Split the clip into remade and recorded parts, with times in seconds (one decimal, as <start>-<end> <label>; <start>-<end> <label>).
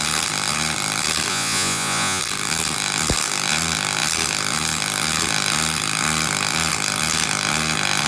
0.0-1.3 recorded; 1.3-2.2 remade; 2.2-8.1 recorded